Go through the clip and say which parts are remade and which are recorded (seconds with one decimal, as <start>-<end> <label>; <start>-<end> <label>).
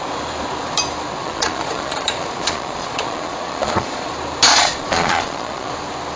0.0-1.2 recorded; 1.2-4.1 remade; 4.1-4.5 recorded; 4.5-5.7 remade; 5.7-6.2 recorded